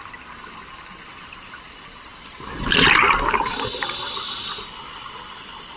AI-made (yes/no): no